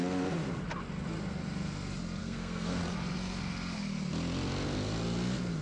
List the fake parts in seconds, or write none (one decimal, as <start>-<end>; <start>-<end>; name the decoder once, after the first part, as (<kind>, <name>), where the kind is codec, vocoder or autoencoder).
2.2-2.8 (codec, SNAC)